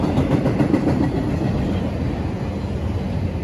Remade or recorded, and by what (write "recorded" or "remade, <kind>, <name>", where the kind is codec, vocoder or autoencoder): recorded